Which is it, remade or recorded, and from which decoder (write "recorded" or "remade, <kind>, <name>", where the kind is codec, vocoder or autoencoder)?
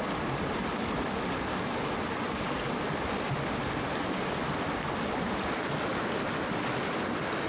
recorded